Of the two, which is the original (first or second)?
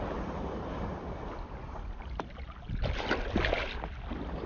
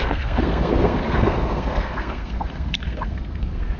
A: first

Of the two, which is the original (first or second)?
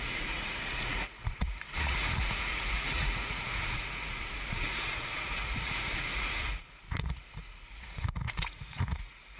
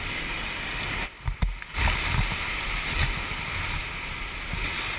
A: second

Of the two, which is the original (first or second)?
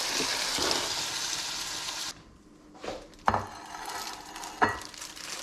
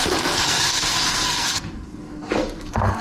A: first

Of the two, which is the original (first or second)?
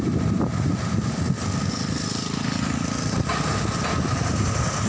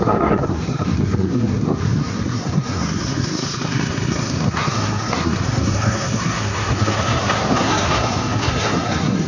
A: first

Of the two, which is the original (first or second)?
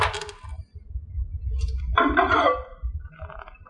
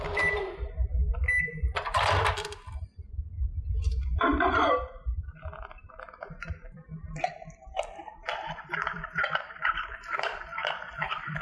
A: first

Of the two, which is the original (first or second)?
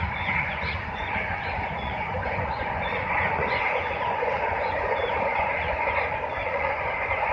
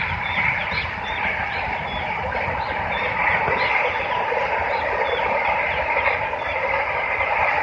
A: second